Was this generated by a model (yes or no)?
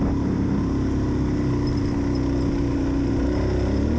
no